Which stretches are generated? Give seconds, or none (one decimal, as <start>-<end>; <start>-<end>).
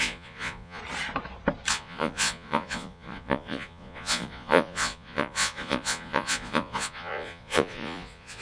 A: 0.0-0.8; 1.7-8.4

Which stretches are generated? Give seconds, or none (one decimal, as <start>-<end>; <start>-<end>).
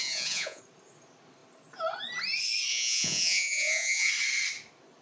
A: 0.0-0.6; 2.7-4.1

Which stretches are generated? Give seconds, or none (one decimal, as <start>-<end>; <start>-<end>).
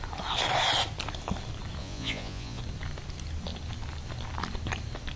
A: 1.8-2.6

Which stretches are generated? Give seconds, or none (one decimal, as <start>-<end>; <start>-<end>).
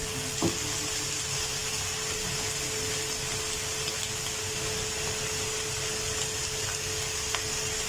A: none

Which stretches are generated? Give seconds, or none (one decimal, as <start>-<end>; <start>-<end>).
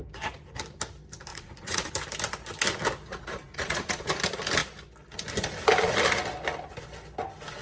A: 1.3-1.9; 3.1-4.1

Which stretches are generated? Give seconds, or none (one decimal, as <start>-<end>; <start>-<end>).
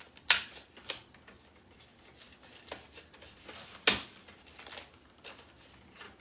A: none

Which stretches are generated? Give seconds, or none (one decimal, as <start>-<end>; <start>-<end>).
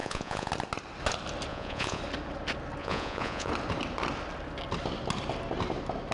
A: 0.0-0.5; 1.5-2.0; 2.8-3.5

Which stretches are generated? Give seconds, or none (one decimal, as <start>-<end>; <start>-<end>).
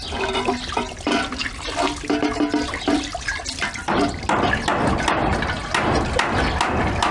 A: none